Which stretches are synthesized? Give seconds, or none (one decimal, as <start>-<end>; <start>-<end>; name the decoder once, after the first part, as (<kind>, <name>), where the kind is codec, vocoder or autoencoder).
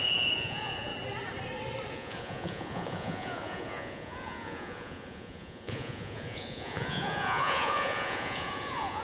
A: 0.0-0.9 (vocoder, Vocos); 1.9-9.0